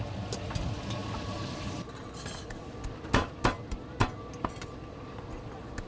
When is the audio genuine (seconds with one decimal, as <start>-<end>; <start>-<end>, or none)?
0.0-5.9